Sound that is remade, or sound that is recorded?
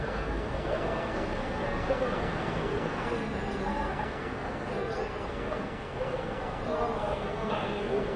remade